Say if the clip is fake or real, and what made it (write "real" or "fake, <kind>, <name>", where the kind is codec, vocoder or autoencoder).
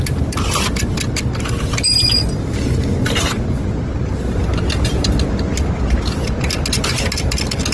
real